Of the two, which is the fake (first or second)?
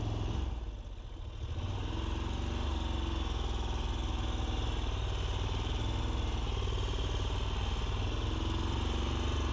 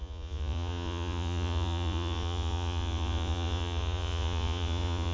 second